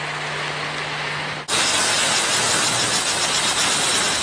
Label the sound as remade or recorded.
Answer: recorded